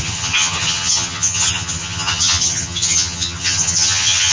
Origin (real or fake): fake